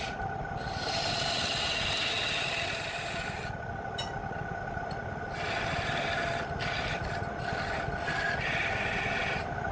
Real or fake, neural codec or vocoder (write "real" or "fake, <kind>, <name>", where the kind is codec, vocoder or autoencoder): real